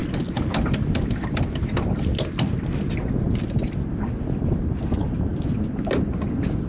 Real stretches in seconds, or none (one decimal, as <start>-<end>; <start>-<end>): 0.0-6.7